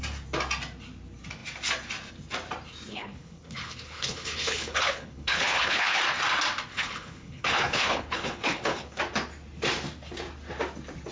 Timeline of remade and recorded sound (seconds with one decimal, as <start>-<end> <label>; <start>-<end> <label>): 0.0-2.9 recorded; 2.9-6.0 remade; 6.0-6.7 recorded; 6.7-9.0 remade; 9.0-11.1 recorded